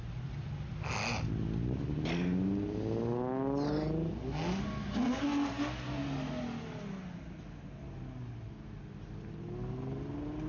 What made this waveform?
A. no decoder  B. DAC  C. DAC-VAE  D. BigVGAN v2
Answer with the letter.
A